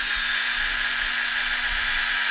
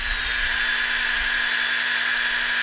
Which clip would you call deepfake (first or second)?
first